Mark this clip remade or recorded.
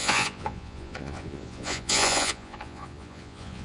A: remade